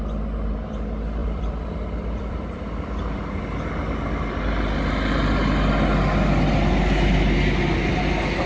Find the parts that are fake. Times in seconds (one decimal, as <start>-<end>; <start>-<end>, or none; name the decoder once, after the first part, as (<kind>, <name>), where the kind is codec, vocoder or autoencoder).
1.2-3.4 (vocoder, BigVGAN v2)